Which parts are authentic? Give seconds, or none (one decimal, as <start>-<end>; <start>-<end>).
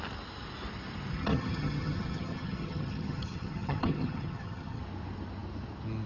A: 0.0-1.1; 4.8-6.1